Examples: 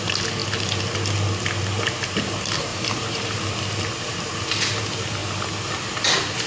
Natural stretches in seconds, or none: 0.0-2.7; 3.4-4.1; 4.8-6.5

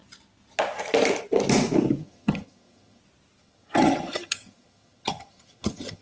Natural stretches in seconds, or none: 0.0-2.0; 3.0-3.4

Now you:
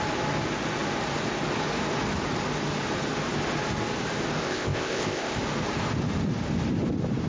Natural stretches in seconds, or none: 0.0-4.4; 5.4-7.3